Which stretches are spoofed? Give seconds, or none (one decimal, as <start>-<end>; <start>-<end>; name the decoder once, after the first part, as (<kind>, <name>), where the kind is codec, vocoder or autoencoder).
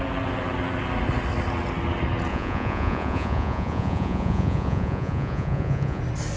2.3-6.0 (vocoder, Vocos)